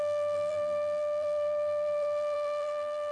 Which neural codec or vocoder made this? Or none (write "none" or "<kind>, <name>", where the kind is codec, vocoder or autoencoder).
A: vocoder, BigVGAN v2